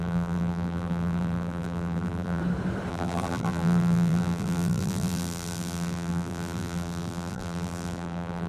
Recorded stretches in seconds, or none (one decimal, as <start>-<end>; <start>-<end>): 2.4-2.9